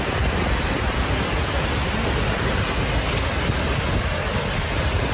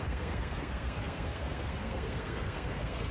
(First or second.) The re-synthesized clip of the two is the second